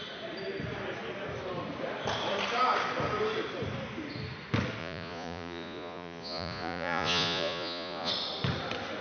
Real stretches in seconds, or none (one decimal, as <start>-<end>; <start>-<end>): 0.0-4.8; 8.1-9.0

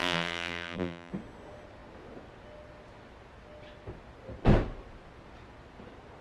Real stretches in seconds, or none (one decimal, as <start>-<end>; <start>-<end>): 1.1-6.2

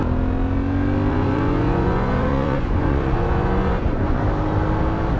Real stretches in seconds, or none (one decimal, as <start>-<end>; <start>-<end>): 0.0-1.1; 4.2-5.2

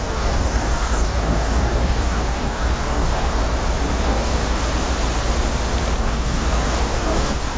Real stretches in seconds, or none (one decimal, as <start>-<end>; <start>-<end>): 3.4-4.0; 4.6-6.0

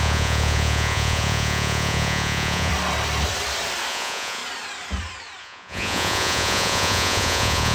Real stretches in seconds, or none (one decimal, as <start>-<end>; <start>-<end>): 2.7-3.9; 4.4-5.4

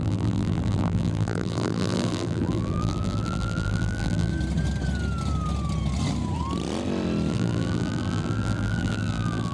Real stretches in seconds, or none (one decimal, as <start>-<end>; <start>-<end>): 4.3-7.3

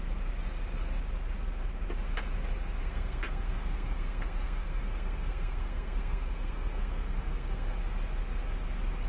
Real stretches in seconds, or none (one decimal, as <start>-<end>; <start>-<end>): 0.0-2.8; 7.8-9.1